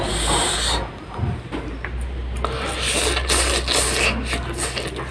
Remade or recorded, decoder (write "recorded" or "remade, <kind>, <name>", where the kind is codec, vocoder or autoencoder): recorded